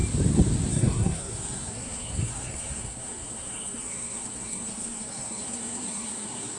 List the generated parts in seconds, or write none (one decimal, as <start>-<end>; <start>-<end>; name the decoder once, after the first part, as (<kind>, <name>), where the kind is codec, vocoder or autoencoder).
0.7-6.6 (codec, SNAC)